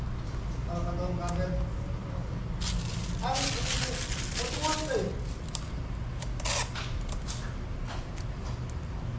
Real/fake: real